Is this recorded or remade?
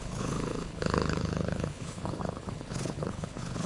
remade